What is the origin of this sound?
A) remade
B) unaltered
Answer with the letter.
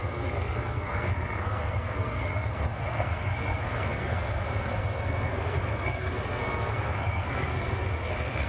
A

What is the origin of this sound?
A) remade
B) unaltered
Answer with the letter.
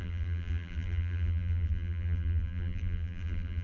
A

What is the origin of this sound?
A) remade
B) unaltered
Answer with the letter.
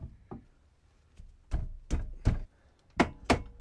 B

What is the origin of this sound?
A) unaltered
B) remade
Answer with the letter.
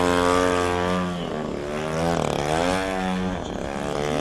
A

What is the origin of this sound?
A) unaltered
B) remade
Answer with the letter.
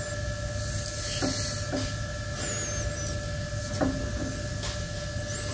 A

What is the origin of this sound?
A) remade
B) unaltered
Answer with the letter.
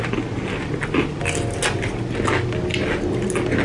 B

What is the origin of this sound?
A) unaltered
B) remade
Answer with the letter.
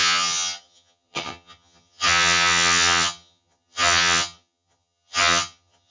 B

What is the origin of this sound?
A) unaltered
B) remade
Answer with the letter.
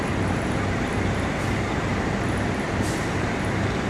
B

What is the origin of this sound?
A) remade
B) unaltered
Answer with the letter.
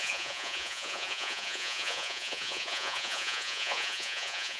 A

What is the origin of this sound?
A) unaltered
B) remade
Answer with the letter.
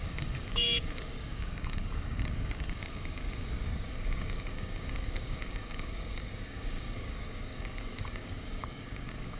B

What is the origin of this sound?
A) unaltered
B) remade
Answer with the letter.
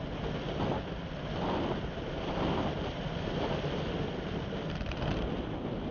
A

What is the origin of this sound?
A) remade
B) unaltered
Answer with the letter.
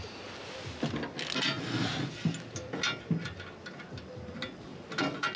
B